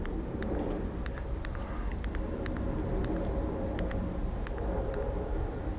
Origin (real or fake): real